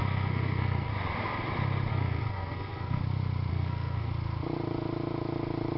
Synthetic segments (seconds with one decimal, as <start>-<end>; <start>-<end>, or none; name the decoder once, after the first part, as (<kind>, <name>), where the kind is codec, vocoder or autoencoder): 0.0-0.9 (codec, SNAC); 1.9-3.0; 3.5-4.1